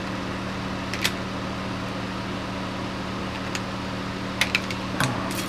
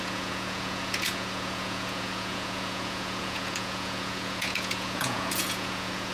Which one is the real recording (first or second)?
first